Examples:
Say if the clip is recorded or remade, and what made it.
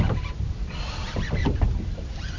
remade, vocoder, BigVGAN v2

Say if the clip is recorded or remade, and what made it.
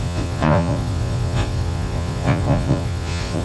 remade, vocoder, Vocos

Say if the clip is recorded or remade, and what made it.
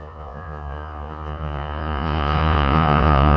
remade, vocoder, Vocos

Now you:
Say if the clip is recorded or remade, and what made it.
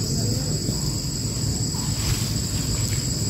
recorded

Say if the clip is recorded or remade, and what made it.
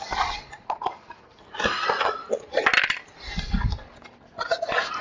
recorded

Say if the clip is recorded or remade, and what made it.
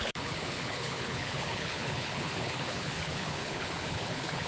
remade, codec, HILCodec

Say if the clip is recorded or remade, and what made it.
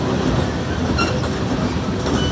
recorded